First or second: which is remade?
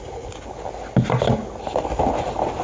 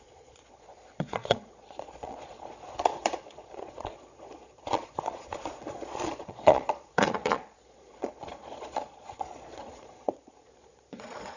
second